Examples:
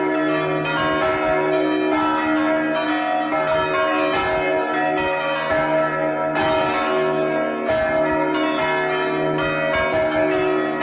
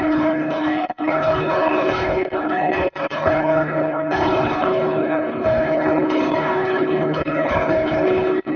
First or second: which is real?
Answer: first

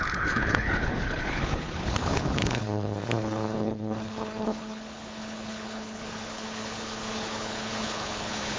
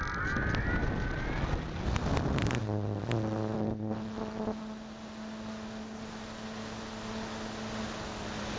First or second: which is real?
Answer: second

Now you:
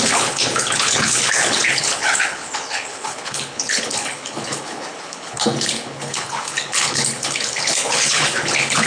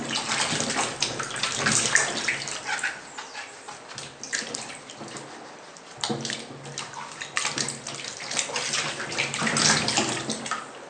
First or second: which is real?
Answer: second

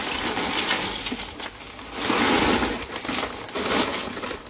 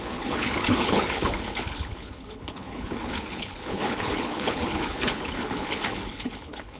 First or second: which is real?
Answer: first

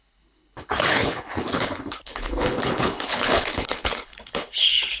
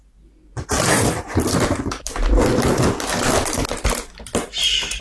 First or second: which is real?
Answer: second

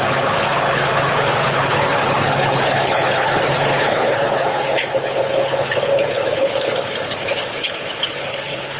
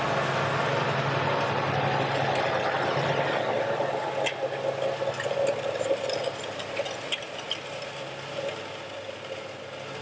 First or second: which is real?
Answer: second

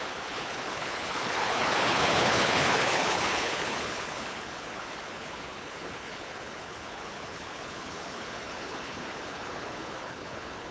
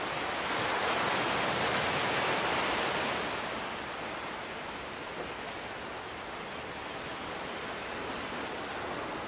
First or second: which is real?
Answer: second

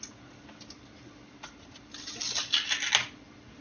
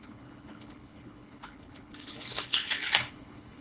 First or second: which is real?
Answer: first